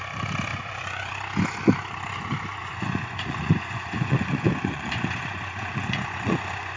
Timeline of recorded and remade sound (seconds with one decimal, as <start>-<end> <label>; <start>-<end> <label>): 0.0-0.5 recorded; 0.5-1.1 remade; 1.1-2.6 recorded; 2.6-6.8 remade